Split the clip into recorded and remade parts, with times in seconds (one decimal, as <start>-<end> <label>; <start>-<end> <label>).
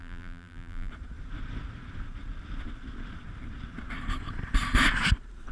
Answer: 0.0-0.9 remade; 0.9-5.5 recorded